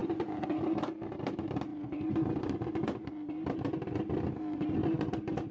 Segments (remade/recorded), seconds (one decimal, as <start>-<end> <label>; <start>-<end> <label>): 0.0-5.5 recorded